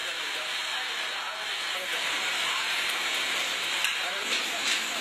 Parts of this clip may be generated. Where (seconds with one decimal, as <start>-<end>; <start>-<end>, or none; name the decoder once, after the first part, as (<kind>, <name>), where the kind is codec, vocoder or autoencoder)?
1.9-5.0 (vocoder, BigVGAN v2)